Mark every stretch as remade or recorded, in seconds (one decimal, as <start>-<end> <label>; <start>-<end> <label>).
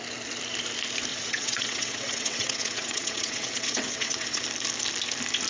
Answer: 0.0-1.1 recorded; 1.1-4.4 remade; 4.4-5.5 recorded